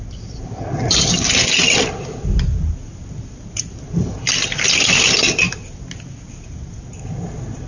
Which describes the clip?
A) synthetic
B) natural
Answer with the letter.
B